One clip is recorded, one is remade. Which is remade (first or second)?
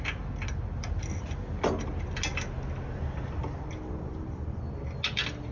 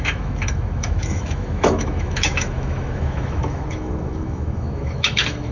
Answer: second